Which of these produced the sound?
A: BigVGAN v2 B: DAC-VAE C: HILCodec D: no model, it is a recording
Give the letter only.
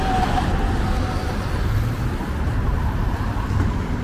D